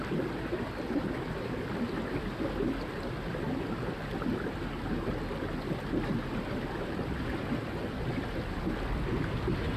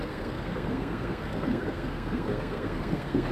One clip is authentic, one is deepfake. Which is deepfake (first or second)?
second